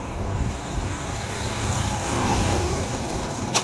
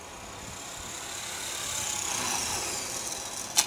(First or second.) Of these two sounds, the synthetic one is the first